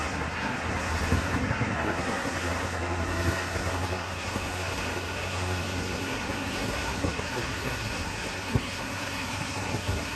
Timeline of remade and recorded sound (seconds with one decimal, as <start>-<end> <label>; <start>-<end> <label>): 0.0-10.2 remade